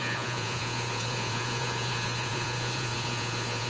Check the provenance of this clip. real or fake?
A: fake